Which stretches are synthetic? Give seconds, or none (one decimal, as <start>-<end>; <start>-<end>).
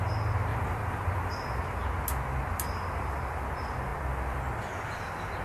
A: 0.5-1.6; 3.9-4.5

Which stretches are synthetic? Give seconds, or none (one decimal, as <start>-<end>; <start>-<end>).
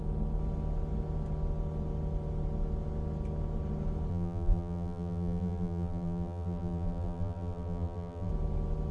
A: 4.1-8.3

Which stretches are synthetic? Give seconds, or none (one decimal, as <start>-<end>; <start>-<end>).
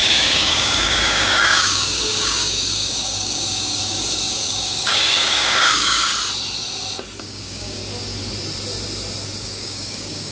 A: 0.0-6.1; 7.2-7.8; 9.4-10.3